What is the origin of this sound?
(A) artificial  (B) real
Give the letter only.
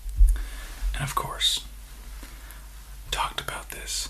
B